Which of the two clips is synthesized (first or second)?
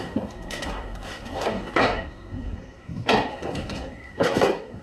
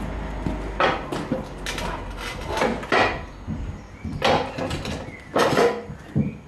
first